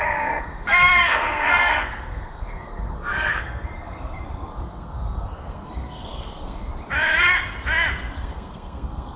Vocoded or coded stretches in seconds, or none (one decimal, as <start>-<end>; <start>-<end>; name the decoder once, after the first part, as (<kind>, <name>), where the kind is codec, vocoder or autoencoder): 0.0-6.7 (codec, SNAC); 8.2-9.2